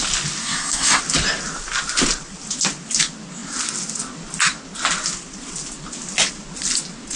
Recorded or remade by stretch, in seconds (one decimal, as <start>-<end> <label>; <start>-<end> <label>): 0.0-0.4 recorded; 0.4-1.0 remade; 1.0-7.2 recorded